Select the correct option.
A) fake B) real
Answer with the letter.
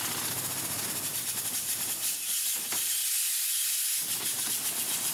B